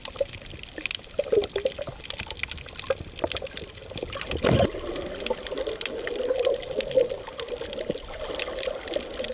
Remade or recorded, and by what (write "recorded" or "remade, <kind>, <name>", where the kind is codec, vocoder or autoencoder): recorded